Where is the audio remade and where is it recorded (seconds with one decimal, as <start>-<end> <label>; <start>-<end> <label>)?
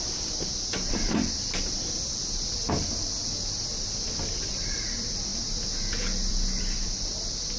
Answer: 0.0-2.2 remade; 2.2-3.8 recorded; 3.8-5.3 remade; 5.3-6.3 recorded; 6.3-7.6 remade